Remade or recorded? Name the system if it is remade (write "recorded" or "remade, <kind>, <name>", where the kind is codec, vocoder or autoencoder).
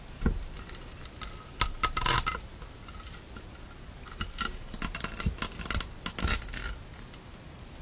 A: recorded